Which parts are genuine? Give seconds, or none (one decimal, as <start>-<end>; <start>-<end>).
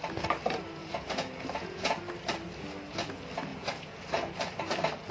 0.0-0.8; 2.0-3.5; 4.3-5.1